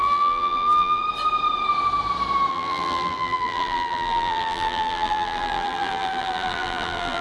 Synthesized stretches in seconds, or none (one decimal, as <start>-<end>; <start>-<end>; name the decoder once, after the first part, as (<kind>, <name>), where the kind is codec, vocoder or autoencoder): 0.0-1.0 (vocoder, BigVGAN v2); 2.5-7.2